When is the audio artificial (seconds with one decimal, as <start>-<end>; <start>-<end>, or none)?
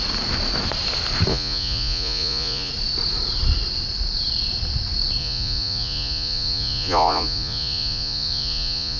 1.3-2.7; 5.2-9.0